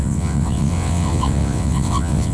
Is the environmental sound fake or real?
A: fake